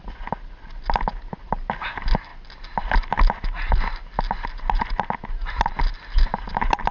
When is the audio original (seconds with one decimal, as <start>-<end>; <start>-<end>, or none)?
0.0-6.9